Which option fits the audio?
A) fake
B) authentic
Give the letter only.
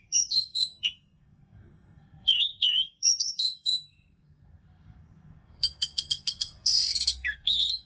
A